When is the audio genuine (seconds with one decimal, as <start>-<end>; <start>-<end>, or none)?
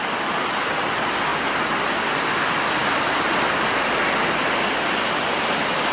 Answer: 0.0-5.9